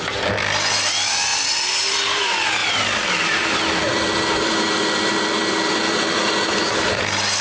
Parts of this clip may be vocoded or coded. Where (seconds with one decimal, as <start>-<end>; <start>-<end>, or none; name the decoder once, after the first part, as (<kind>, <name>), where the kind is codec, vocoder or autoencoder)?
1.3-2.2 (vocoder, BigVGAN v2); 2.6-7.0